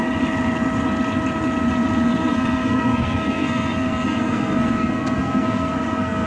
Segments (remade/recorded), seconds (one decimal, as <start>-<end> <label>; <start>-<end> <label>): 0.0-2.3 recorded; 2.3-6.3 remade